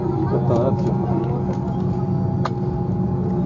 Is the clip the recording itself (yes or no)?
yes